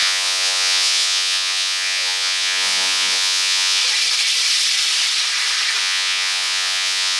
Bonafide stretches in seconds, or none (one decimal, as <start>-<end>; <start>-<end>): 3.8-5.8